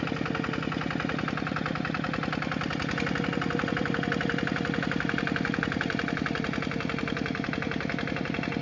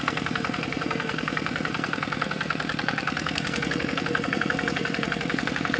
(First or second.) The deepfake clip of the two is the second